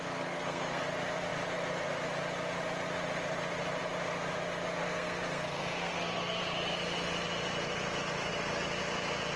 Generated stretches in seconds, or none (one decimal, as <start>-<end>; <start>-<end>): 0.0-0.8; 4.8-6.4